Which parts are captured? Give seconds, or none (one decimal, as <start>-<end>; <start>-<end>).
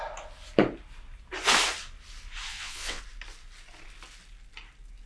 0.0-2.5; 3.0-5.1